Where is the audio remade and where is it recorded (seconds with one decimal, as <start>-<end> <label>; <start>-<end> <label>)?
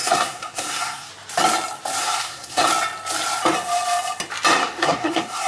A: 0.0-1.1 remade; 1.1-2.0 recorded; 2.0-2.7 remade; 2.7-4.6 recorded; 4.6-5.5 remade